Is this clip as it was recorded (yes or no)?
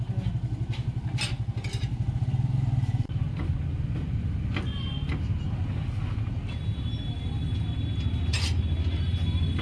yes